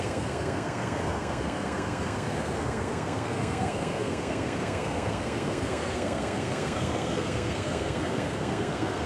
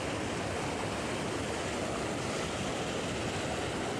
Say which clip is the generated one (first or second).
first